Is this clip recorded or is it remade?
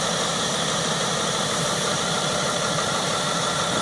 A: remade